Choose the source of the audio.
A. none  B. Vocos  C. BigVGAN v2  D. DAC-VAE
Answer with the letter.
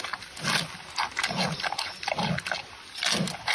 A